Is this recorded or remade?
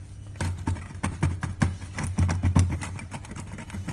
recorded